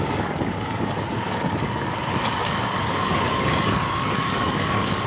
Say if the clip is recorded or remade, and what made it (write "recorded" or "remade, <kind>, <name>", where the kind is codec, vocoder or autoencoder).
remade, codec, DAC